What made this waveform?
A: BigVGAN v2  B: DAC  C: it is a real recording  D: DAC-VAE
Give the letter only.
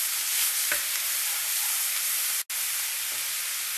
C